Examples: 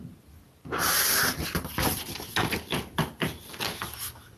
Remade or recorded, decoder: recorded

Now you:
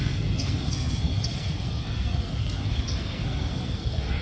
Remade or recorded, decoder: remade, codec, SNAC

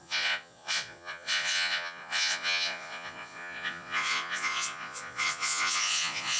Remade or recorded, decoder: remade, vocoder, Vocos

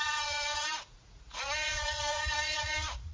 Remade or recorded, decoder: remade, vocoder, Vocos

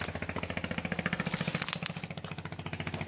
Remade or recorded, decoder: recorded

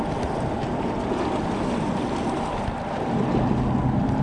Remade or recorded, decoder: recorded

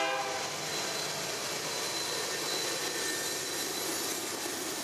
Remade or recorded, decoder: recorded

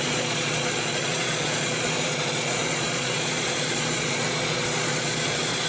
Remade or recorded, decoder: remade, vocoder, Vocos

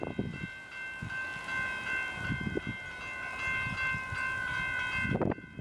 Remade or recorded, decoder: recorded